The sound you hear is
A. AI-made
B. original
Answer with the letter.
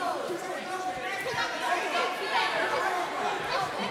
A